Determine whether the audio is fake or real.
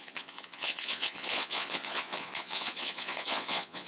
fake